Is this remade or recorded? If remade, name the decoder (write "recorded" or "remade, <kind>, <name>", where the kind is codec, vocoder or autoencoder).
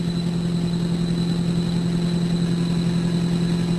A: recorded